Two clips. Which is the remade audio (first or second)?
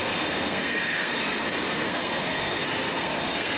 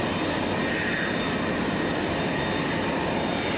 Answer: first